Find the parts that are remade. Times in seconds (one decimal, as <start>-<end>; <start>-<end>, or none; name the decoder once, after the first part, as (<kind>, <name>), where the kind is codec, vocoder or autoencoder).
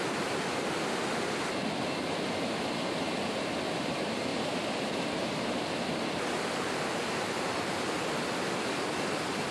4.3-5.5 (vocoder, BigVGAN v2)